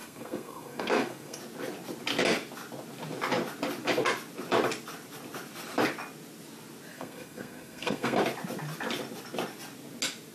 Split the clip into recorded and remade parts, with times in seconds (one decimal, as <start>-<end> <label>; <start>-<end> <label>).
0.0-1.4 remade; 1.4-6.9 recorded; 6.9-8.2 remade; 8.2-10.3 recorded